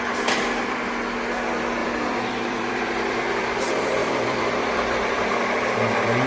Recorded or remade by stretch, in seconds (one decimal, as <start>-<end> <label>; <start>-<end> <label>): 0.0-1.8 recorded; 1.8-3.6 remade; 3.6-4.0 recorded; 4.0-5.4 remade; 5.4-6.3 recorded